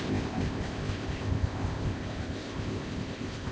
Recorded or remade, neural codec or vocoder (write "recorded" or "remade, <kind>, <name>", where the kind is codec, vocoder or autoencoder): remade, codec, ZipCodec